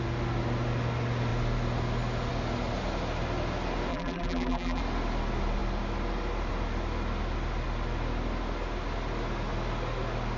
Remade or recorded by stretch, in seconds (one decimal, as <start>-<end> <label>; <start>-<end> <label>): 0.0-3.9 recorded; 3.9-4.8 remade; 4.8-10.4 recorded